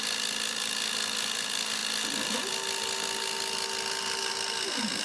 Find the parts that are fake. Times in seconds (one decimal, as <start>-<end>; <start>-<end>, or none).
none